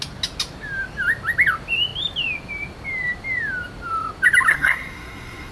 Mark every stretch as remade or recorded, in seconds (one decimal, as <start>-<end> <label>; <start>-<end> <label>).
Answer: 0.0-4.5 recorded; 4.5-5.5 remade